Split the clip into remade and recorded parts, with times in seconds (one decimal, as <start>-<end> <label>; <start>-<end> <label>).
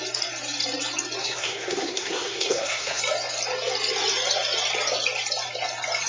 0.0-1.2 recorded; 1.2-3.0 remade; 3.0-6.1 recorded